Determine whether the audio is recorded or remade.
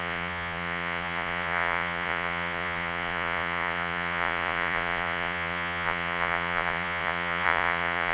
remade